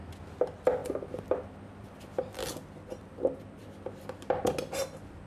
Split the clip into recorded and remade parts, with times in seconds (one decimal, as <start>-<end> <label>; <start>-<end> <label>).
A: 0.0-5.3 recorded